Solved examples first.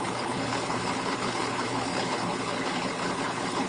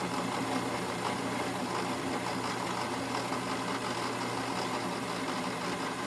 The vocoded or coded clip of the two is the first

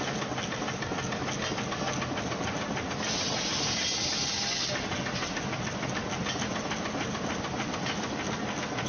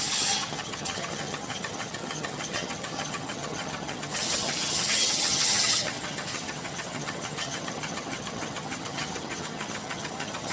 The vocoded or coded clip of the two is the second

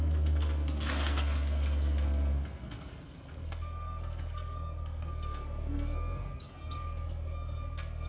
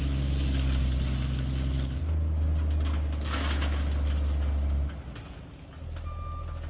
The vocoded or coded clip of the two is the first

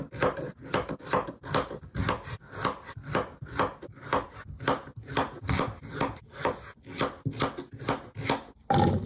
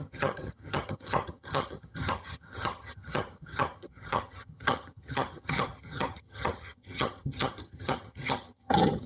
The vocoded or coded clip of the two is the second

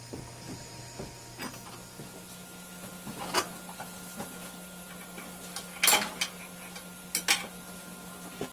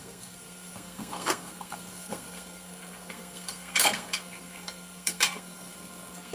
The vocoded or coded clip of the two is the second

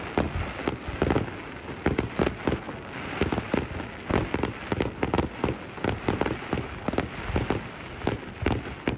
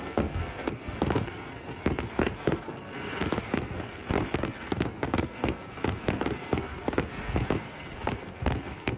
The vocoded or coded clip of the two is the second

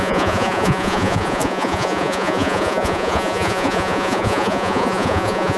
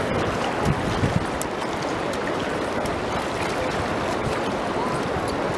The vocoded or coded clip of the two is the first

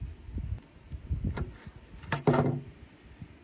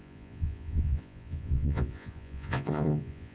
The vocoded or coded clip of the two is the second